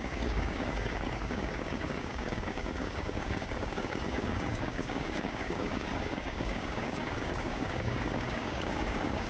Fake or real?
fake